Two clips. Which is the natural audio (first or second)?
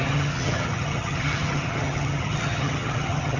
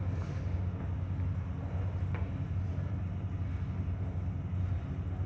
second